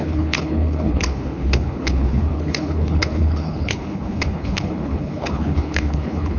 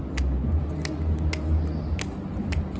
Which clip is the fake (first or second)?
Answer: first